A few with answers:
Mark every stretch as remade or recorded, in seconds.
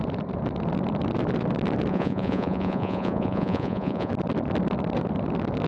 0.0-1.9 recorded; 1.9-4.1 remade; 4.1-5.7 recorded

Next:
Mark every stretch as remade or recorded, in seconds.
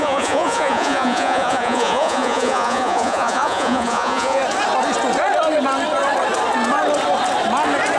0.0-4.4 remade; 4.4-8.0 recorded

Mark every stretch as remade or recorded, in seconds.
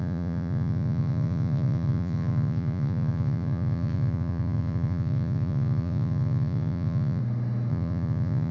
0.0-7.2 remade; 7.2-7.7 recorded; 7.7-8.5 remade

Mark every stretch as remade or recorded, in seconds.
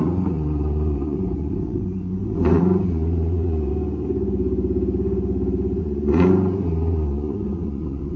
0.0-3.7 remade; 3.7-5.8 recorded; 5.8-8.2 remade